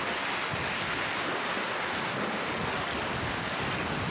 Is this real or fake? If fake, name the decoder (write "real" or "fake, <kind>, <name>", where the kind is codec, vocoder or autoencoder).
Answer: real